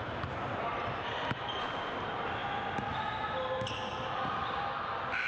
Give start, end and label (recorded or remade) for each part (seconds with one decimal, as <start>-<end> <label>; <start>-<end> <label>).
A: 0.0-0.7 recorded; 0.7-1.4 remade; 1.4-5.3 recorded

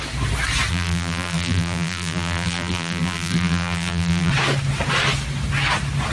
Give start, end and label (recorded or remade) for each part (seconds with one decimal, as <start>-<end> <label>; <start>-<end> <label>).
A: 0.0-0.7 recorded; 0.7-4.3 remade; 4.3-6.1 recorded

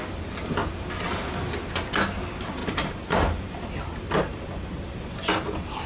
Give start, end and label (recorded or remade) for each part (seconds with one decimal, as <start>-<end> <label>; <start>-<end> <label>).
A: 0.0-2.6 recorded; 2.6-5.1 remade; 5.1-5.9 recorded